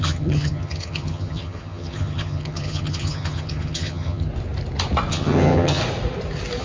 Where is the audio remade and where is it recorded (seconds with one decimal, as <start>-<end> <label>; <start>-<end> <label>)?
0.0-4.3 remade; 4.3-5.1 recorded; 5.1-5.8 remade; 5.8-6.6 recorded